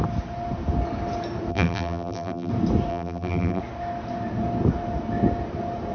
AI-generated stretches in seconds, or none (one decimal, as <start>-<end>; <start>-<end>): 1.5-2.5; 2.9-3.6